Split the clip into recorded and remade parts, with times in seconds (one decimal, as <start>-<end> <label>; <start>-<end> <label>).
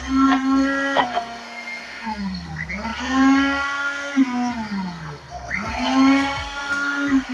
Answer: 0.0-7.3 remade